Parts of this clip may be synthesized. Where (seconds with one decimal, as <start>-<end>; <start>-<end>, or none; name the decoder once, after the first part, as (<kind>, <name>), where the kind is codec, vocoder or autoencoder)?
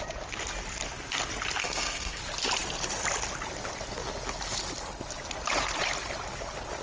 1.6-2.2 (codec, SNAC)